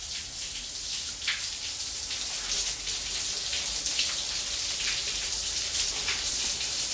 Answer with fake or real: real